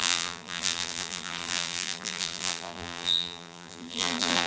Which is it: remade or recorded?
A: remade